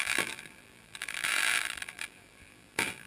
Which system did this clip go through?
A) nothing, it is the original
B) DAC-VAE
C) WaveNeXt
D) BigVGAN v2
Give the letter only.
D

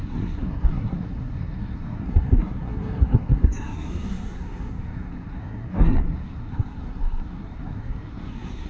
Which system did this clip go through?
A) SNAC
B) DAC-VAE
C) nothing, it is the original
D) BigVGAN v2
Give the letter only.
A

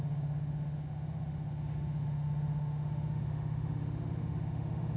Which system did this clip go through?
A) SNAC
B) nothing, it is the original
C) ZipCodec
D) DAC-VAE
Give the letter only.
D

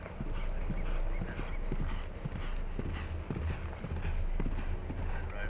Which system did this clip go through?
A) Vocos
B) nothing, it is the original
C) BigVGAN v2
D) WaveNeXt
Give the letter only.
B